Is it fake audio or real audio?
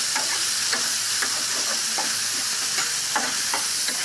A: fake